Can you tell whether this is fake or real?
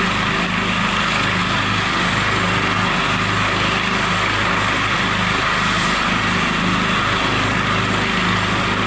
real